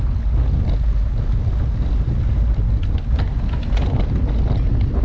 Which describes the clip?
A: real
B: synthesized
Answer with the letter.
A